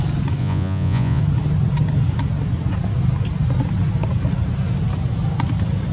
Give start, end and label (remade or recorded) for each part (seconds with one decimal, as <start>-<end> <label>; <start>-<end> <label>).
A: 0.0-0.4 recorded; 0.4-1.2 remade; 1.2-5.9 recorded